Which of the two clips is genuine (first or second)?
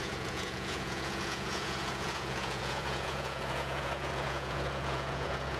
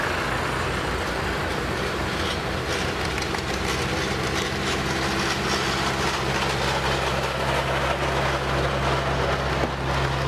second